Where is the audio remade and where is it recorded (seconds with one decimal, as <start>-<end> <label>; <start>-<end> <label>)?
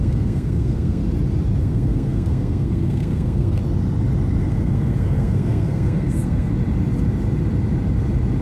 0.0-1.0 remade; 1.0-1.6 recorded; 1.6-3.6 remade; 3.6-4.4 recorded; 4.4-6.5 remade; 6.5-8.4 recorded